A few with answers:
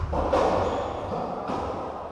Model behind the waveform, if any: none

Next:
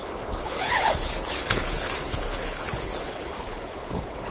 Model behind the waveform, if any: codec, HILCodec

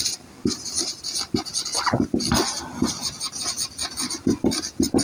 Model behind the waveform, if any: none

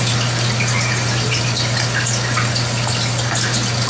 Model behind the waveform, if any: none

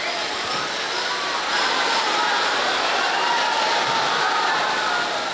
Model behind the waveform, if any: none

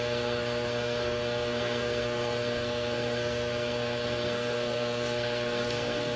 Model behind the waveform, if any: codec, SNAC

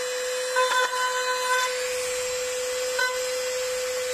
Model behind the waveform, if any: none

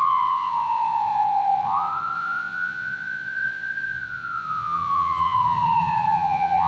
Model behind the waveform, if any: vocoder, Vocos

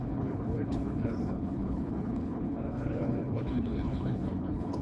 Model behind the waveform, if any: codec, HILCodec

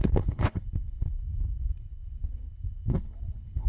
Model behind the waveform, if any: codec, HILCodec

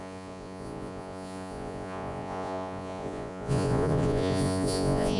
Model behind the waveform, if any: vocoder, Vocos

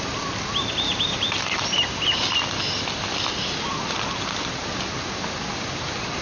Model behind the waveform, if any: none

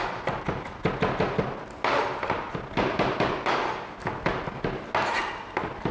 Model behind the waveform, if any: none